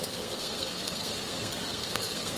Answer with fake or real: fake